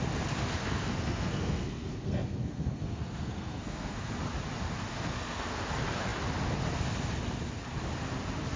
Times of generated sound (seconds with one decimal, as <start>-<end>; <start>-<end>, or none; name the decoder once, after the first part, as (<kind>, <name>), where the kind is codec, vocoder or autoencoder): 0.6-4.1 (codec, SNAC); 4.9-5.6